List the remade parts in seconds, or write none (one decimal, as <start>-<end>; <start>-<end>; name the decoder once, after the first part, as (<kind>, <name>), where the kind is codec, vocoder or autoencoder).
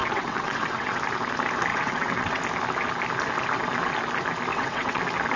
0.0-1.0 (vocoder, WaveNeXt); 1.7-2.4; 4.5-5.0